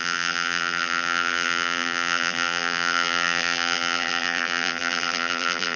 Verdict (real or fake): fake